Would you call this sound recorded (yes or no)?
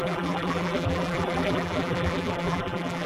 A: no